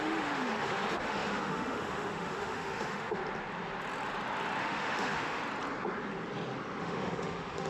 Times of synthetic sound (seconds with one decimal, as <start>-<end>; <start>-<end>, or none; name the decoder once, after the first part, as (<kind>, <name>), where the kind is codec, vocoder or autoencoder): 0.0-3.2 (autoencoder, DAC-VAE); 4.6-5.4; 6.8-7.7